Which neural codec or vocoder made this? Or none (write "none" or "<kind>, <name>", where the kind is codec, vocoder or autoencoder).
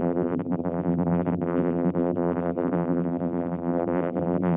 vocoder, BigVGAN v2